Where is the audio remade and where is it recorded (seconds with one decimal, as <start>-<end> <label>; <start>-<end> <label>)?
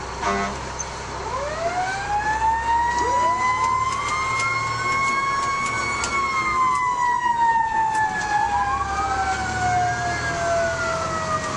0.0-11.6 recorded